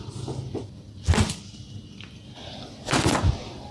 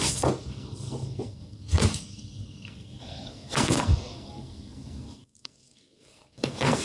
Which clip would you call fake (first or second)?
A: second